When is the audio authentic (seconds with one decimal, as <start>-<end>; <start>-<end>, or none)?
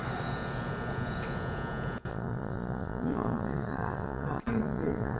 0.0-2.1